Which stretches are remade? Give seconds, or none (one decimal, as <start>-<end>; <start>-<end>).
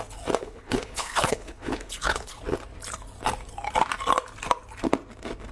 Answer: 0.4-2.4